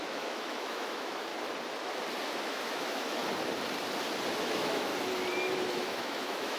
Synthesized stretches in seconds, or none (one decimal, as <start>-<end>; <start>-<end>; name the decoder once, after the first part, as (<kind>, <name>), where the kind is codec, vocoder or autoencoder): 0.0-1.3 (autoencoder, DAC-VAE); 2.4-3.2; 4.4-4.9; 5.7-6.6